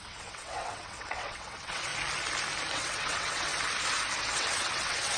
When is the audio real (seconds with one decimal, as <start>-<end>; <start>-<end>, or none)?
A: 1.9-2.7; 3.5-4.2